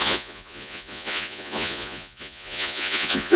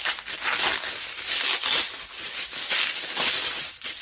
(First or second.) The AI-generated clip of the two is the first